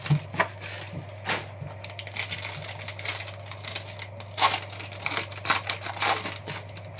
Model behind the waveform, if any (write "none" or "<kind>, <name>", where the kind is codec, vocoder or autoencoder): none